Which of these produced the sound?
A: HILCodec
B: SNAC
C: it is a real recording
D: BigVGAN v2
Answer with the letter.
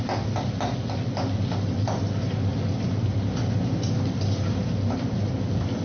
C